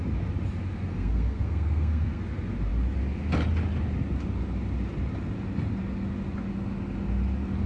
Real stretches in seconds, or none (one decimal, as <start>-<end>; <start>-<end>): 0.0-0.9; 2.2-7.7